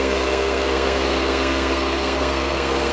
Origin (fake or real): fake